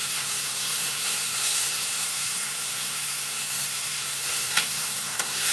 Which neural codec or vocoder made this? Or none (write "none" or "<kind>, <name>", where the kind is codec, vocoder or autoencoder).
codec, SNAC